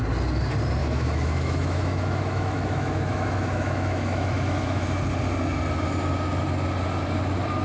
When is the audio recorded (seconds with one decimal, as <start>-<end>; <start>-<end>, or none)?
0.0-0.8; 5.0-7.6